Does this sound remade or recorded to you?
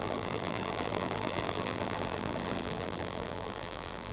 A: remade